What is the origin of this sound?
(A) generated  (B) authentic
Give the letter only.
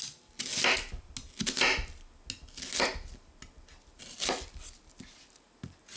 B